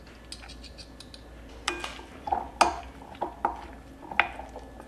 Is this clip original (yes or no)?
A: yes